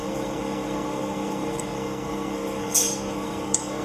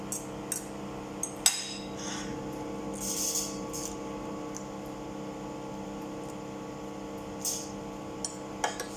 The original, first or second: second